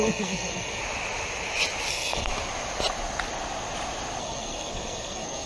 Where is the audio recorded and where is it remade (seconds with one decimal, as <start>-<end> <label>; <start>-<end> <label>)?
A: 0.0-0.8 remade; 0.8-1.9 recorded; 1.9-2.3 remade; 2.3-4.2 recorded; 4.2-5.5 remade